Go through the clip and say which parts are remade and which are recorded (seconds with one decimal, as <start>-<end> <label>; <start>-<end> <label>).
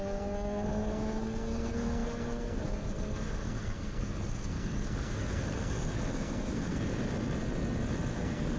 0.0-7.0 remade; 7.0-8.1 recorded; 8.1-8.6 remade